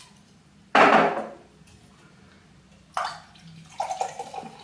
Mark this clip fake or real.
real